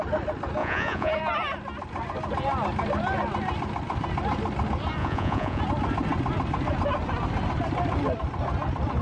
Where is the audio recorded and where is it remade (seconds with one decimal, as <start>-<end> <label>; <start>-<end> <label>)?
0.0-0.6 recorded; 0.6-1.1 remade; 1.1-5.0 recorded; 5.0-5.6 remade; 5.6-9.0 recorded